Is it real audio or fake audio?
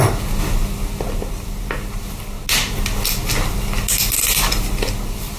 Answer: real